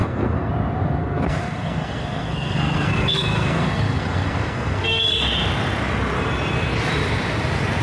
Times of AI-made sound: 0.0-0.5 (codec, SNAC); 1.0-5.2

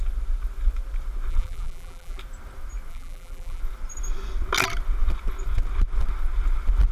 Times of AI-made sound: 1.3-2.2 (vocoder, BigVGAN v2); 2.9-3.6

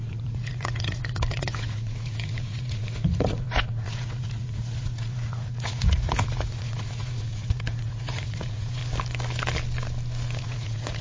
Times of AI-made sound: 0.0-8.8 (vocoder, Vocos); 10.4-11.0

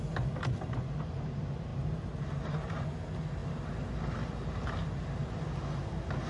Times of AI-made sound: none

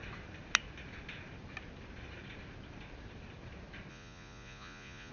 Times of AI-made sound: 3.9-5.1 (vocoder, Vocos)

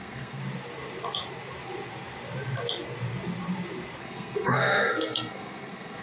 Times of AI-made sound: 0.0-0.4 (codec, SNAC); 4.0-6.0

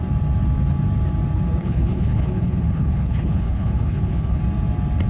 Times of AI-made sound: 1.6-4.4 (codec, HILCodec)